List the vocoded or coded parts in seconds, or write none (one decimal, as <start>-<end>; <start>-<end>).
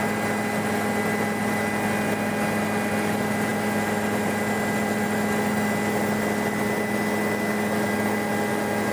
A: none